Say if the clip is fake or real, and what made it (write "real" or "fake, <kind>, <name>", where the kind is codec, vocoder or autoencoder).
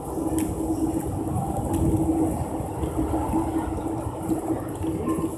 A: real